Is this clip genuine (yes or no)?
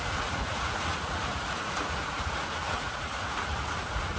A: no